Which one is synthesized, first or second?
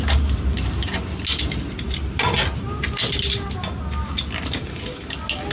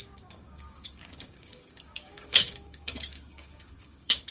second